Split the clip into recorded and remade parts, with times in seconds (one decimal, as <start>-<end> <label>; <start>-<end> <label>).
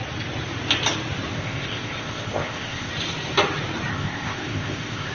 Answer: 0.0-1.3 recorded; 1.3-2.9 remade; 2.9-3.9 recorded; 3.9-5.1 remade